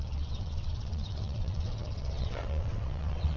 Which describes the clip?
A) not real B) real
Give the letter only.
A